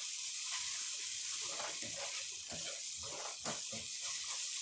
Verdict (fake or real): real